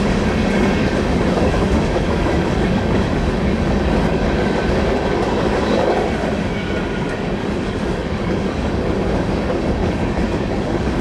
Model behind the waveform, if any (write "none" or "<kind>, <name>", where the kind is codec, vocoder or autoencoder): codec, DAC